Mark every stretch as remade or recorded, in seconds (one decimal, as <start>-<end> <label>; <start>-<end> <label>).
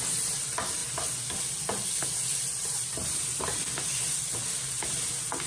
0.0-5.5 recorded